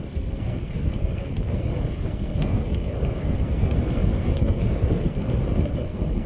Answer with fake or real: fake